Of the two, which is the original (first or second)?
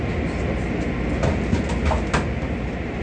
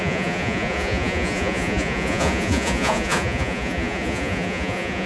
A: first